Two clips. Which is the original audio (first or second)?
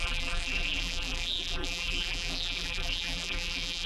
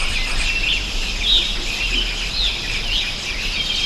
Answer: second